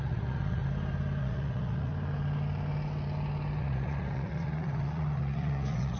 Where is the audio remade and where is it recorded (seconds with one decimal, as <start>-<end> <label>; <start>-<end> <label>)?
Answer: 0.0-0.6 remade; 0.6-1.2 recorded; 1.2-1.9 remade; 1.9-3.6 recorded; 3.6-6.0 remade